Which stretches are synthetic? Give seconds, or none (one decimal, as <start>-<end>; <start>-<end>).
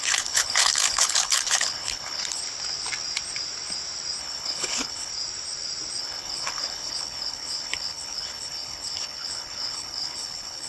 0.0-2.4; 4.2-5.1; 6.0-10.7